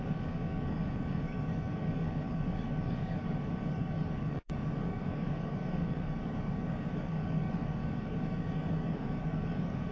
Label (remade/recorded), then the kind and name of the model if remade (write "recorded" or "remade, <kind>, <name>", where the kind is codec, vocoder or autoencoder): remade, codec, DAC